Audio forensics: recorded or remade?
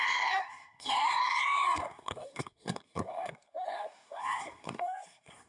remade